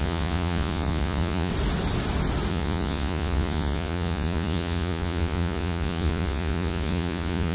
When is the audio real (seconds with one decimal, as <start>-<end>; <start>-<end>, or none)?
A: 1.5-2.5